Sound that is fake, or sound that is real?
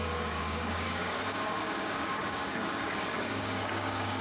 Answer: fake